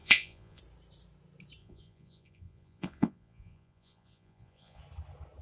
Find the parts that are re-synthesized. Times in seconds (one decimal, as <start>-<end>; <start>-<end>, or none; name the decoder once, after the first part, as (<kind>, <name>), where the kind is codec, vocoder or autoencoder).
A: 0.0-0.6 (vocoder, Vocos); 1.6-4.8